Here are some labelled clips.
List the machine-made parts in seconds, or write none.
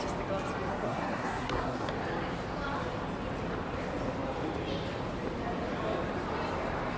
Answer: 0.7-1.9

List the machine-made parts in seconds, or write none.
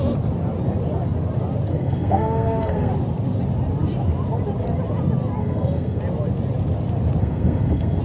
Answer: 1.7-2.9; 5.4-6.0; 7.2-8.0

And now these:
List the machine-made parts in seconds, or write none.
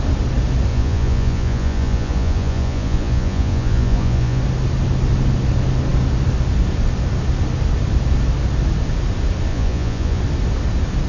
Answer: 0.7-4.4; 9.5-10.2